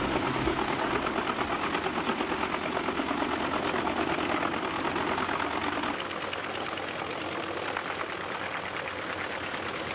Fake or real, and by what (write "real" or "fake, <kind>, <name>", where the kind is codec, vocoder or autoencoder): real